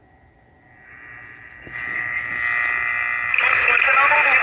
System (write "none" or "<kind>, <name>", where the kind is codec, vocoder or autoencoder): none